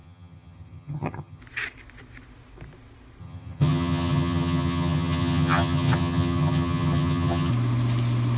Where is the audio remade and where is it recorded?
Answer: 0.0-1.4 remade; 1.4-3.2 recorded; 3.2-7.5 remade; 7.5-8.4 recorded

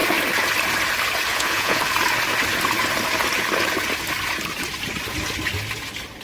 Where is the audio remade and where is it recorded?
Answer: 0.0-1.3 recorded; 1.3-1.8 remade; 1.8-6.2 recorded

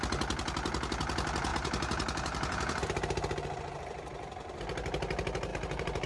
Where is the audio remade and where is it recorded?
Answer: 0.0-1.5 recorded; 1.5-4.6 remade; 4.6-5.5 recorded; 5.5-6.1 remade

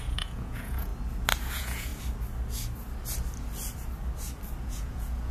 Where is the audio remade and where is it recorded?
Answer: 0.0-0.9 remade; 0.9-1.5 recorded; 1.5-1.9 remade; 1.9-4.6 recorded; 4.6-5.3 remade

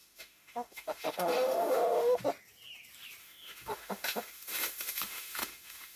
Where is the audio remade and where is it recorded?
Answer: 0.0-2.2 remade; 2.2-3.2 recorded; 3.2-6.0 remade

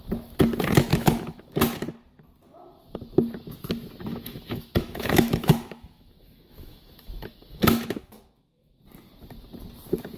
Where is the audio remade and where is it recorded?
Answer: 0.0-0.9 recorded; 0.9-1.5 remade; 1.5-4.1 recorded; 4.1-8.8 remade; 8.8-10.2 recorded